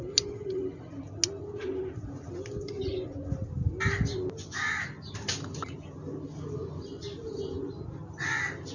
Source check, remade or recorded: recorded